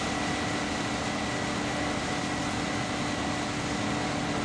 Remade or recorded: recorded